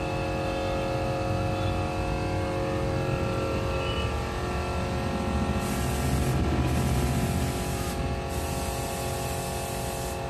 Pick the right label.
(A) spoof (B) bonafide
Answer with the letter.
B